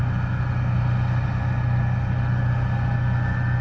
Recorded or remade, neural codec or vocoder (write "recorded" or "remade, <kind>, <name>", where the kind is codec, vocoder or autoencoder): recorded